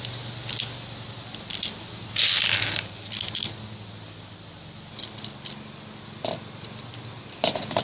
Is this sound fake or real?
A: real